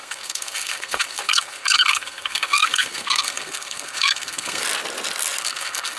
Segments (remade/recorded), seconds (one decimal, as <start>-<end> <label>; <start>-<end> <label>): 0.0-4.6 remade; 4.6-5.4 recorded; 5.4-6.0 remade